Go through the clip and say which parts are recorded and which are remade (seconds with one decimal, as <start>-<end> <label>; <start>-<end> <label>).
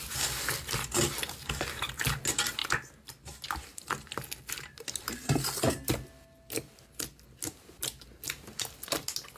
0.0-9.4 recorded